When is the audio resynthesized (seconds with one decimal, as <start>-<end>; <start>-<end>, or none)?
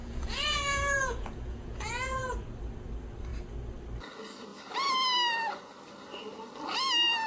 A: 0.0-2.3